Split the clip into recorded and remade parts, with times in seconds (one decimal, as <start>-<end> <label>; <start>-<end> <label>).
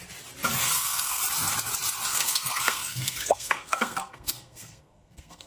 0.0-0.6 recorded; 0.6-1.2 remade; 1.2-2.1 recorded; 2.1-5.5 remade